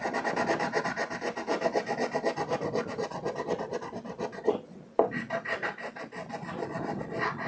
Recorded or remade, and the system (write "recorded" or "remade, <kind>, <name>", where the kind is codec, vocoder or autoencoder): recorded